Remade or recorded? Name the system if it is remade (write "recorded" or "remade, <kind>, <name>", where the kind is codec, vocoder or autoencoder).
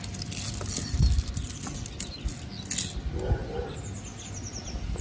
recorded